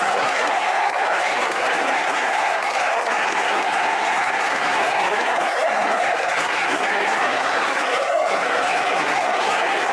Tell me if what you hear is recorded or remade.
remade